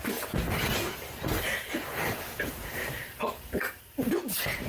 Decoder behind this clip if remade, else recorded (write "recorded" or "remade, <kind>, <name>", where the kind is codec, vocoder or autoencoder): remade, vocoder, BigVGAN v2